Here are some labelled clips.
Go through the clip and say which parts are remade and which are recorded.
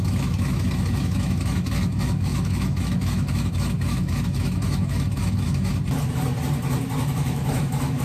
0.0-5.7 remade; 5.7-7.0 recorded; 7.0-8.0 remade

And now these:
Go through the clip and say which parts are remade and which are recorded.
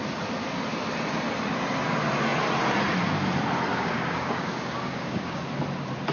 0.0-3.7 recorded; 3.7-5.4 remade; 5.4-6.1 recorded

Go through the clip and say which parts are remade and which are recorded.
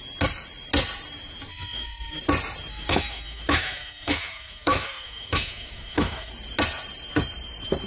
0.0-1.5 recorded; 1.5-2.2 remade; 2.2-2.7 recorded; 2.7-6.3 remade; 6.3-7.9 recorded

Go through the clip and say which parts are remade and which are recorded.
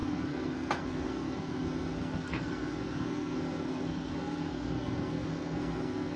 0.0-6.2 remade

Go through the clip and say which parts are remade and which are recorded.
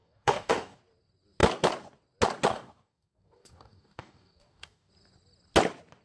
0.0-0.8 remade; 0.8-2.5 recorded; 2.5-4.9 remade; 4.9-6.0 recorded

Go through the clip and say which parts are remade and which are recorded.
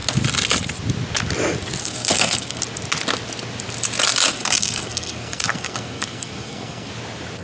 0.0-1.8 recorded; 1.8-2.6 remade; 2.6-4.3 recorded; 4.3-6.9 remade; 6.9-7.4 recorded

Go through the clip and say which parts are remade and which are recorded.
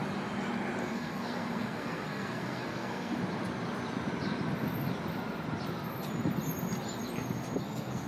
0.0-0.8 recorded; 0.8-3.2 remade; 3.2-7.6 recorded; 7.6-8.1 remade